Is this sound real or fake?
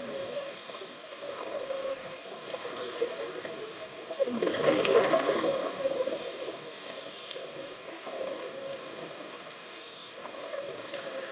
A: fake